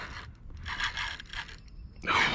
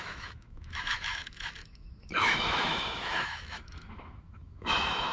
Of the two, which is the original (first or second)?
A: first